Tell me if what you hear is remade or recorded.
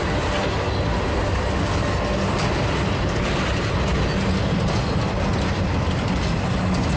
recorded